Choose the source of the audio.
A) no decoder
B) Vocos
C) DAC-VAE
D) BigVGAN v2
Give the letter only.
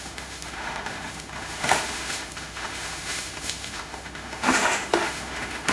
C